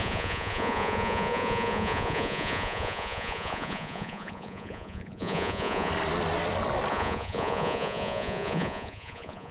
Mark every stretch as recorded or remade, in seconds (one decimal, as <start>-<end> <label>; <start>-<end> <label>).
0.0-5.9 remade; 5.9-6.9 recorded; 6.9-9.5 remade